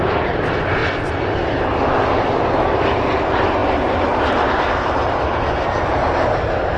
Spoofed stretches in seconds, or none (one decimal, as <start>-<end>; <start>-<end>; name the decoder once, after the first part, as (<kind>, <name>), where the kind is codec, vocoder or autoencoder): none